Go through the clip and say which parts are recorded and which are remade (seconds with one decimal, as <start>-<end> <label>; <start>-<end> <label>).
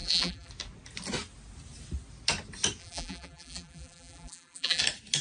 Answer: 0.0-0.5 remade; 0.5-2.8 recorded; 2.8-4.8 remade; 4.8-5.2 recorded